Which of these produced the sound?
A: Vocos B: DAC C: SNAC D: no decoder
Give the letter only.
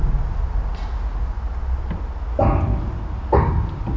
D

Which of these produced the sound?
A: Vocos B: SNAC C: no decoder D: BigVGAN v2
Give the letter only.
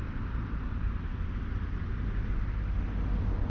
C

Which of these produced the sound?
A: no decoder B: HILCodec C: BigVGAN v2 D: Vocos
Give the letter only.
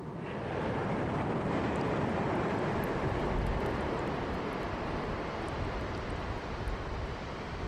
C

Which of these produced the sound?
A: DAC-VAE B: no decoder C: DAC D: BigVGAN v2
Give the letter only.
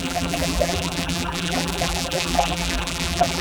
D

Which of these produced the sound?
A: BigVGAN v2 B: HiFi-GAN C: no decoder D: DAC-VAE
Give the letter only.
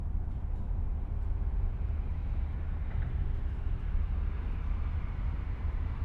A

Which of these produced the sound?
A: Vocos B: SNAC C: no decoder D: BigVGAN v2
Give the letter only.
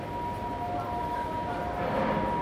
C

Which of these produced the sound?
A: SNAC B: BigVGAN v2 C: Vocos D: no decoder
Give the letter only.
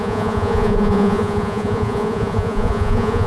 C